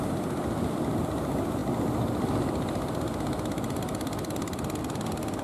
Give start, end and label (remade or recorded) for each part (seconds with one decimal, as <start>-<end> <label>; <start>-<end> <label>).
0.0-5.4 recorded